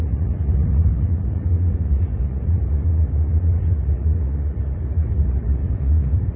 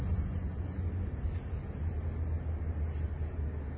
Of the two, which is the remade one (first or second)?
first